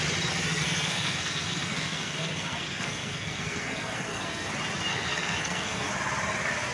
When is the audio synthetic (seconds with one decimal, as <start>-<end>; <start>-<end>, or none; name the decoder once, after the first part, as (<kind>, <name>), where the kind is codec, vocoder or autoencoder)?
0.5-4.5 (codec, SNAC); 4.9-5.9

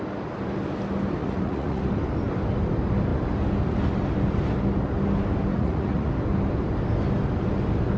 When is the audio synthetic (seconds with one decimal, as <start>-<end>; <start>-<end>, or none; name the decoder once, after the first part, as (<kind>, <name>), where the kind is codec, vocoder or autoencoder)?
1.2-1.8 (vocoder, Vocos); 5.5-6.1

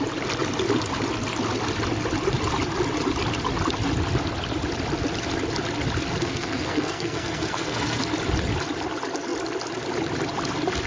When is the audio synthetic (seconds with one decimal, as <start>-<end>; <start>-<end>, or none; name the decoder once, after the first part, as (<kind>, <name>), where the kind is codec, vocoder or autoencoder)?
6.2-8.0 (codec, SNAC)